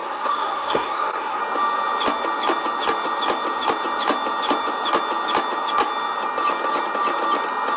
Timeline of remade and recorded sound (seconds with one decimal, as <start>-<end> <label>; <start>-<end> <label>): 0.0-1.4 remade; 1.4-7.8 recorded